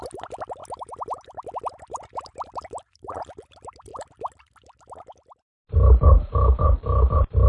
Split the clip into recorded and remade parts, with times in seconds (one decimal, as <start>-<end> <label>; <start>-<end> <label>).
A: 0.0-7.5 recorded